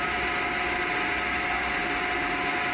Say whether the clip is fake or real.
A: real